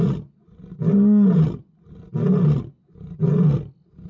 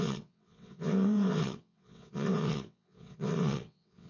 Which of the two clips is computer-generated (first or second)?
second